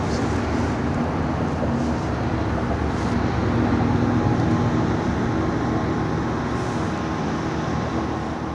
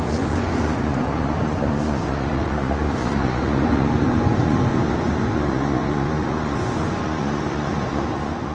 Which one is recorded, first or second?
first